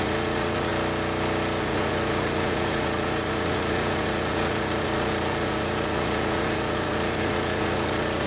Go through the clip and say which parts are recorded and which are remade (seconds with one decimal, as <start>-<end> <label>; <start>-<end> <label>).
0.0-0.7 remade; 0.7-1.6 recorded; 1.6-8.3 remade